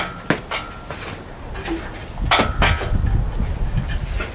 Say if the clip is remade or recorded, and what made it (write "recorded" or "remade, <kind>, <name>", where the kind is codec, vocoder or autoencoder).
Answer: recorded